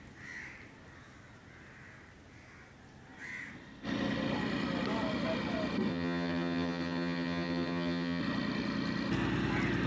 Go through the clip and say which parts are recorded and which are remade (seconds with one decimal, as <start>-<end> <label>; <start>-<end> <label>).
0.0-5.9 recorded; 5.9-8.2 remade; 8.2-9.9 recorded